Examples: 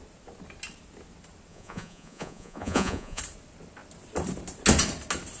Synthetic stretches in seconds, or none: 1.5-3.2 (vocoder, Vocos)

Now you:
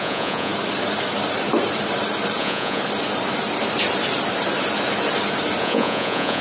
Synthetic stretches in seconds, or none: 0.0-0.5 (vocoder, Vocos); 2.4-2.8; 5.6-6.4

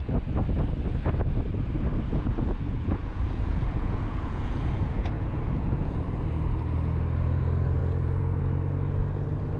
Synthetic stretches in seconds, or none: 2.1-6.1 (vocoder, Vocos); 7.8-8.4

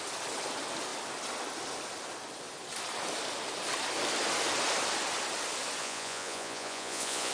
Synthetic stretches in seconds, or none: 5.8-7.3 (vocoder, Vocos)

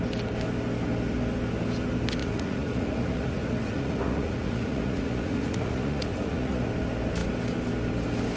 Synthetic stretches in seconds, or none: 2.2-6.7 (vocoder, Vocos)

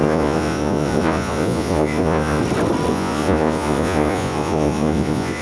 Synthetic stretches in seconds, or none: 0.0-2.4 (vocoder, Vocos); 2.9-5.4

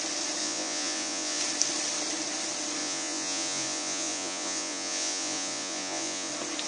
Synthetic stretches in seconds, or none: 0.4-1.4 (vocoder, Vocos); 2.8-6.3

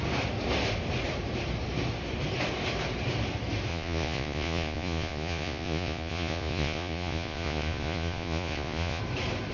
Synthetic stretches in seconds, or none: 3.7-9.0 (vocoder, Vocos)